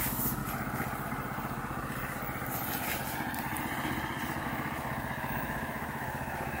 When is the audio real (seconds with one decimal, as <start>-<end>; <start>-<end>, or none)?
0.4-4.4